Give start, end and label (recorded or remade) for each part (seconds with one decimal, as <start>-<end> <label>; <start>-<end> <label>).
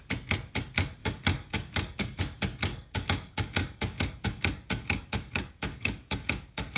0.0-1.0 recorded; 1.0-2.2 remade; 2.2-2.7 recorded; 2.7-6.8 remade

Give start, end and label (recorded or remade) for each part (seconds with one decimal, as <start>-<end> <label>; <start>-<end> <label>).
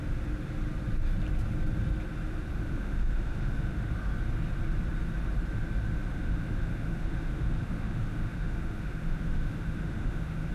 0.0-2.5 recorded; 2.5-3.9 remade; 3.9-6.1 recorded; 6.1-10.5 remade